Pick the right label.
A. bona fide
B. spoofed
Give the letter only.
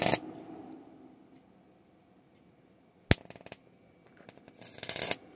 A